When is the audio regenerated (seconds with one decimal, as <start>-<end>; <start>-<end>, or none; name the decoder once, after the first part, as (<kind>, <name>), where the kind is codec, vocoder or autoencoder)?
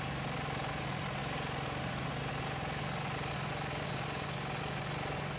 none